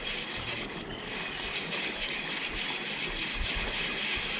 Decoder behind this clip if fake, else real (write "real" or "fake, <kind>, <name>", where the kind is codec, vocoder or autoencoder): real